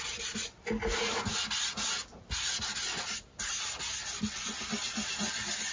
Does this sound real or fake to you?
real